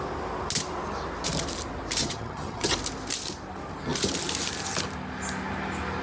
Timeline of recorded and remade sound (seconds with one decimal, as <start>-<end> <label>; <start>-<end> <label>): 0.0-2.0 recorded; 2.0-2.7 remade; 2.7-6.0 recorded